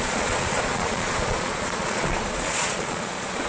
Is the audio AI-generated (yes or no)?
yes